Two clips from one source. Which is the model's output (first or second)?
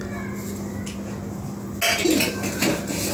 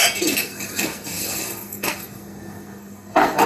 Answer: second